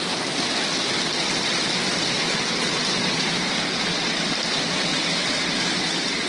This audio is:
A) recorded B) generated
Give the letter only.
A